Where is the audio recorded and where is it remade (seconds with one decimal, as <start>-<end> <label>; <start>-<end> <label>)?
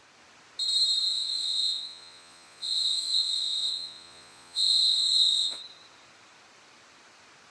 0.0-1.1 recorded; 1.1-5.6 remade; 5.6-7.5 recorded